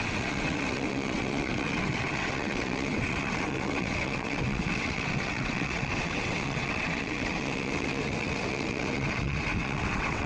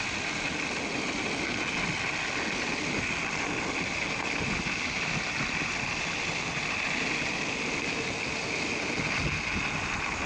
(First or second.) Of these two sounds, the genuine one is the second